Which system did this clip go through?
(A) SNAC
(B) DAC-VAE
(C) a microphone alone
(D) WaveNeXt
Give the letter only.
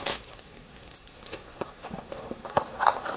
A